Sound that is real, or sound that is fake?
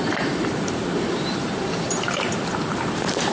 fake